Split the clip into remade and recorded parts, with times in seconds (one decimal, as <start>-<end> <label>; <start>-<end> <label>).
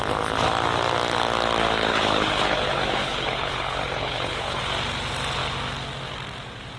0.0-1.9 recorded; 1.9-4.6 remade; 4.6-6.8 recorded